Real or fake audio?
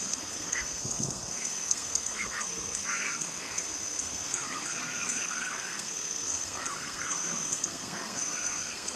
fake